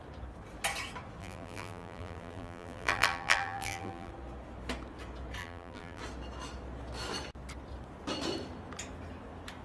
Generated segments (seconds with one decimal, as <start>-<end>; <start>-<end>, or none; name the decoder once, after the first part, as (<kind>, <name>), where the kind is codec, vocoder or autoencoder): 1.2-4.1 (vocoder, BigVGAN v2); 5.4-6.0